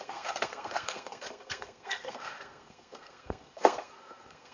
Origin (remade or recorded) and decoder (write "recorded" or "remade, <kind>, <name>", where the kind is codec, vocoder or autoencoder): remade, codec, SNAC